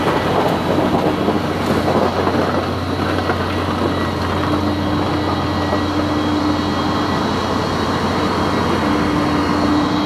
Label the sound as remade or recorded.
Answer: recorded